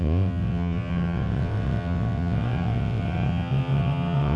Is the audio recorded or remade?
remade